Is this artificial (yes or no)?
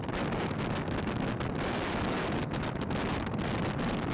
no